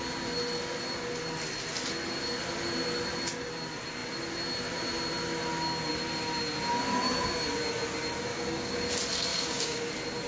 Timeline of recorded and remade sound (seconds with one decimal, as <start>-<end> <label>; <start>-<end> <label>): 0.0-8.3 recorded; 8.3-8.9 remade; 8.9-9.3 recorded; 9.3-9.9 remade; 9.9-10.3 recorded

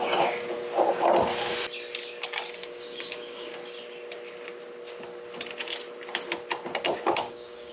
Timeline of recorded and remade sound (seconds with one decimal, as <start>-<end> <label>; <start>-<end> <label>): 0.0-0.6 remade; 0.6-2.5 recorded; 2.5-3.6 remade; 3.6-7.3 recorded; 7.3-7.7 remade

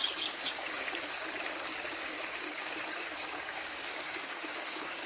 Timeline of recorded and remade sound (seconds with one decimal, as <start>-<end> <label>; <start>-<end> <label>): 0.0-0.9 remade; 0.9-1.7 recorded; 1.7-5.1 remade

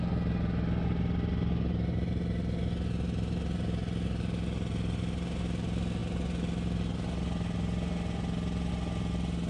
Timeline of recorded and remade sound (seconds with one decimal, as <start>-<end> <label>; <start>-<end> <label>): 0.0-9.5 recorded

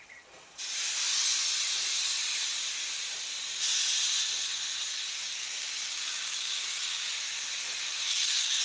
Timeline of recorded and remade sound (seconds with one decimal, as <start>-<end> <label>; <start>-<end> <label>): 0.0-5.2 recorded; 5.2-7.0 remade; 7.0-7.9 recorded; 7.9-8.6 remade